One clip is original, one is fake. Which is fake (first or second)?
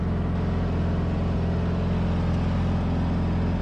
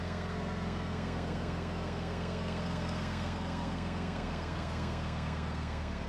second